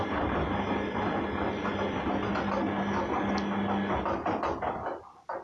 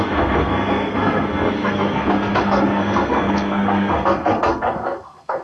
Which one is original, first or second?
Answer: first